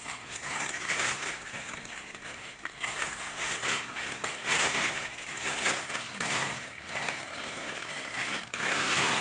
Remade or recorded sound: remade